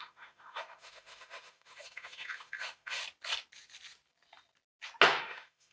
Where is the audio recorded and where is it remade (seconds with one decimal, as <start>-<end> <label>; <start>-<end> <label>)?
0.0-3.0 remade; 3.0-5.2 recorded; 5.2-5.7 remade